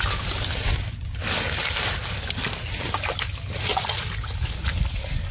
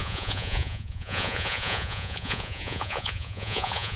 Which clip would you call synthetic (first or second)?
second